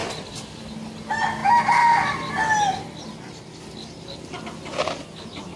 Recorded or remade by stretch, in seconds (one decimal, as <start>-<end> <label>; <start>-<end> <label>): 0.0-5.6 recorded